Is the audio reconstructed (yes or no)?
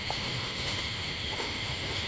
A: yes